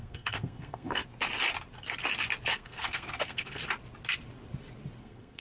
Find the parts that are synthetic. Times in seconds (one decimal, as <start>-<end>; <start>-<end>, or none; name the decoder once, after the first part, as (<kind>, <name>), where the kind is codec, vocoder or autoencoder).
0.0-1.0 (codec, SNAC); 2.5-3.6; 5.0-5.4